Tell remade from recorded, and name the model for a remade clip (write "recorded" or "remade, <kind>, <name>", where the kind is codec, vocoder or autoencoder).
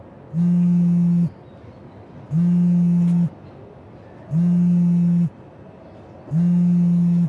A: recorded